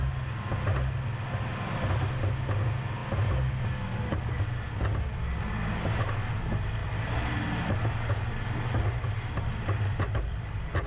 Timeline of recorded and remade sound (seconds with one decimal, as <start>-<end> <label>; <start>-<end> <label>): 0.0-10.9 recorded